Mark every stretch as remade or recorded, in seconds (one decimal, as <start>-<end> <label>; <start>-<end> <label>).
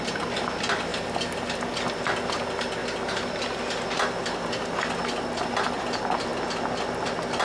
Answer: 0.0-7.4 recorded